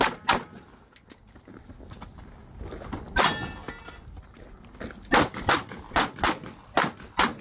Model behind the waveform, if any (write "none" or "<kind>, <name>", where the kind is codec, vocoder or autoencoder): none